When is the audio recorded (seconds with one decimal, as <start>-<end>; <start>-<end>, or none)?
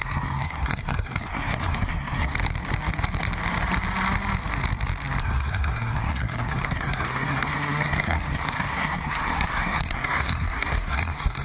2.3-5.2